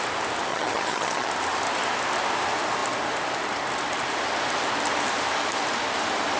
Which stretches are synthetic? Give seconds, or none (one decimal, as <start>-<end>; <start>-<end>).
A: 0.5-1.3